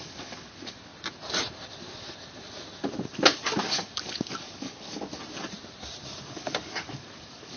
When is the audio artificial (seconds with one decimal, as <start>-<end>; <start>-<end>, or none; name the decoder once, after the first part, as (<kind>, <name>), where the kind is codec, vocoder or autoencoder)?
0.0-0.9 (codec, DAC); 3.6-5.1; 6.3-7.6